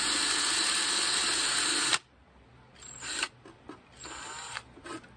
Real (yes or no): yes